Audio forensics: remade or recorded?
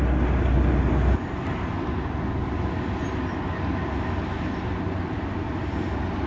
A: recorded